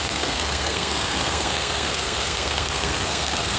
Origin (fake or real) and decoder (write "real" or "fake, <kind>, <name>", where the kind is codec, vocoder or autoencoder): fake, codec, SNAC